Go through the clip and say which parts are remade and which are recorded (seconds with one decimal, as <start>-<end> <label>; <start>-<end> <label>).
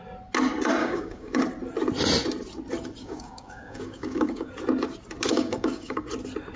0.0-0.8 recorded; 0.8-1.4 remade; 1.4-3.0 recorded; 3.0-4.5 remade; 4.5-5.3 recorded; 5.3-6.1 remade; 6.1-6.6 recorded